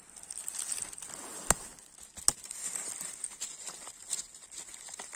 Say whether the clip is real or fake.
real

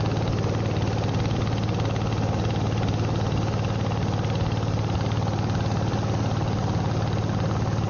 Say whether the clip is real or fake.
real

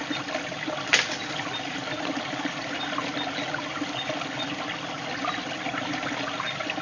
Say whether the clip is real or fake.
real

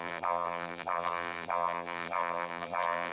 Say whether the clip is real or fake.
fake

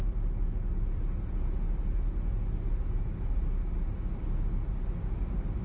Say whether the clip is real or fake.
real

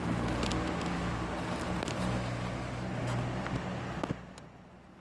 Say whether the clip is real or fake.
real